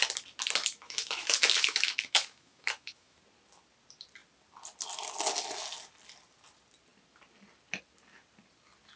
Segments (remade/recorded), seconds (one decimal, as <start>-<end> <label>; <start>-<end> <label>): 0.0-0.6 recorded; 0.6-3.2 remade; 3.2-9.0 recorded